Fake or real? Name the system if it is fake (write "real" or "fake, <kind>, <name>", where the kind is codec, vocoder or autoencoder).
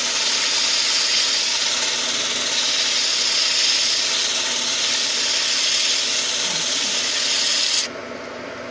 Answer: real